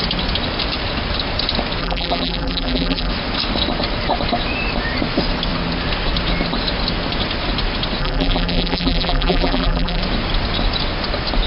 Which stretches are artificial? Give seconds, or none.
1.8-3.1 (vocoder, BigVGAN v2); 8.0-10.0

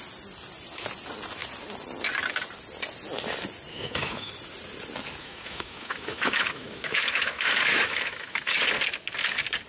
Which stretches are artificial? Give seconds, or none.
3.7-4.3 (autoencoder, DAC-VAE); 5.2-8.7